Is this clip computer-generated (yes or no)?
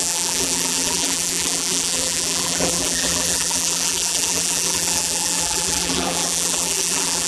yes